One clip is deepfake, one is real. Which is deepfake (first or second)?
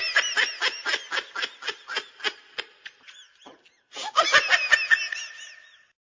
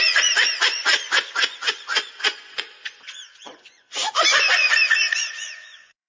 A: second